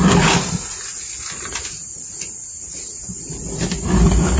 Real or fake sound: real